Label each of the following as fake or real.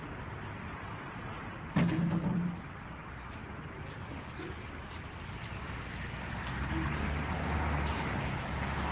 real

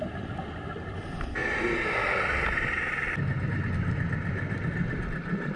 real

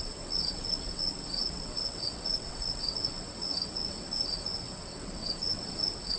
fake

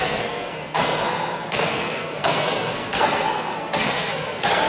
fake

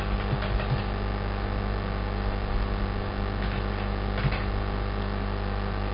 real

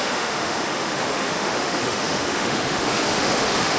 fake